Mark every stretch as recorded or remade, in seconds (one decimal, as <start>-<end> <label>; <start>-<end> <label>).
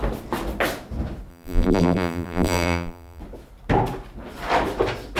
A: 0.0-1.3 recorded; 1.3-3.2 remade; 3.2-5.2 recorded